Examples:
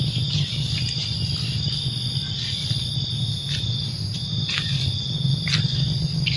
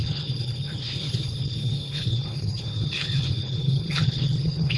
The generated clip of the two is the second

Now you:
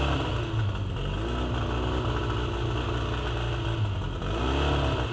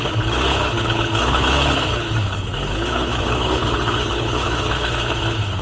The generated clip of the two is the second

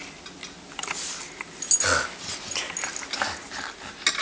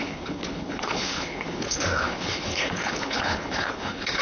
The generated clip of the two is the second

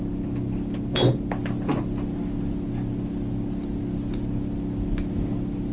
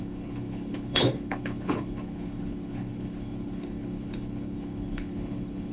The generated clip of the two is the second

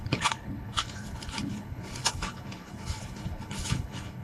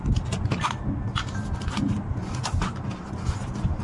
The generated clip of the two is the first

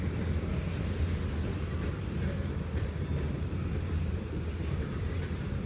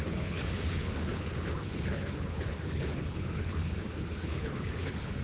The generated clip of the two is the second